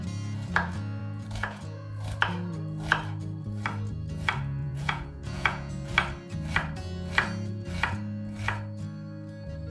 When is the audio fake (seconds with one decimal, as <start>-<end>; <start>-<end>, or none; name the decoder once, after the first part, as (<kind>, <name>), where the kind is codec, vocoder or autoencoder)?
1.0-1.6 (vocoder, Vocos); 4.6-5.7

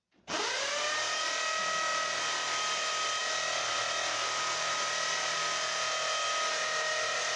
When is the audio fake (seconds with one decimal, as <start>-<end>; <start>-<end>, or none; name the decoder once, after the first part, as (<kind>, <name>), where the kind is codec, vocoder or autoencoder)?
none

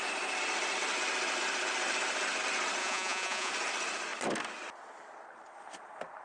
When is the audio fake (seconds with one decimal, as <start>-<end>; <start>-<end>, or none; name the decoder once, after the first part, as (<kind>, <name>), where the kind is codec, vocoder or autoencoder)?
2.8-3.5 (vocoder, Vocos)